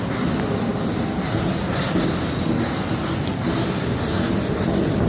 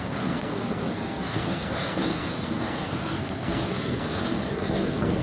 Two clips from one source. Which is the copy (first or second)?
second